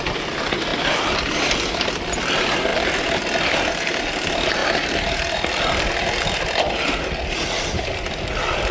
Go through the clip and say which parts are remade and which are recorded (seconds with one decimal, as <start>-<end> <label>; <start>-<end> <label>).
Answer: 0.0-8.7 recorded